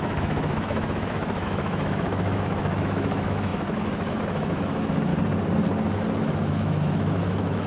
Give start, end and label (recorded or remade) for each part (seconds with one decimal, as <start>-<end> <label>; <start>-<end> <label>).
0.0-5.1 remade; 5.1-6.2 recorded; 6.2-7.7 remade